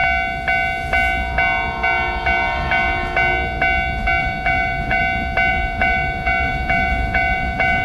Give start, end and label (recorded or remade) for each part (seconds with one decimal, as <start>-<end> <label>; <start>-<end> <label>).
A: 0.0-4.2 recorded; 4.2-5.0 remade; 5.0-5.5 recorded; 5.5-7.8 remade